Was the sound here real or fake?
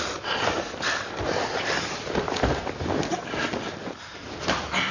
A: real